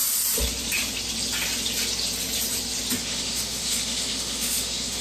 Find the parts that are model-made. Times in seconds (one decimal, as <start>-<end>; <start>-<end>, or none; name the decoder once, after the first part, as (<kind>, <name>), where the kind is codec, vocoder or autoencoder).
3.0-5.0 (autoencoder, DAC-VAE)